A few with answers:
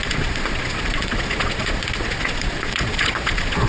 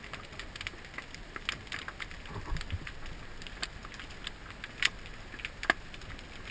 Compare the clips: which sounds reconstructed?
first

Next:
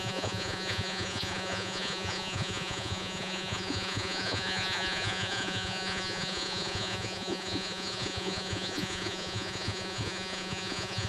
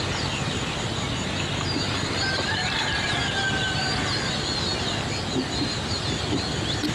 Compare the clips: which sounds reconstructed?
first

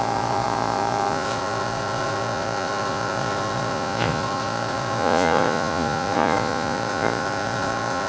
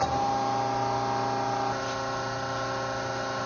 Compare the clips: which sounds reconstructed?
first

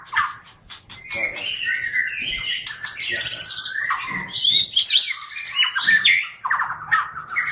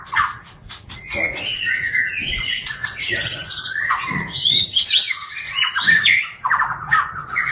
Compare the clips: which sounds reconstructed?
second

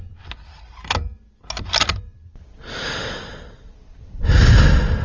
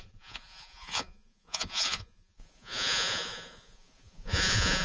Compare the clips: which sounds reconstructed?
second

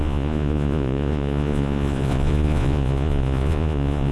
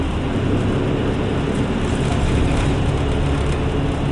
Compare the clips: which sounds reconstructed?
first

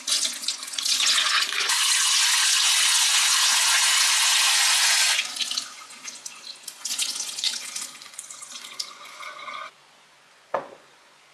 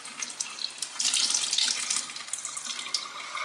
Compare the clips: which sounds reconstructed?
first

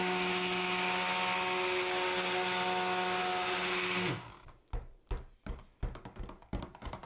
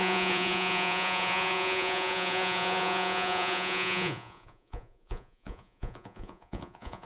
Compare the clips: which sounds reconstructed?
second